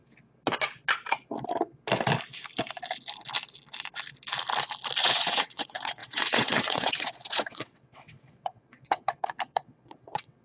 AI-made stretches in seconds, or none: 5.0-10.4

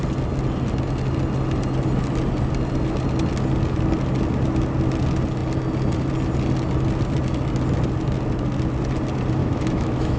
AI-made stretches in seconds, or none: 9.4-10.2

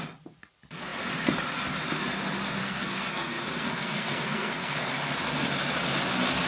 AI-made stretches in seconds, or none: 2.6-4.9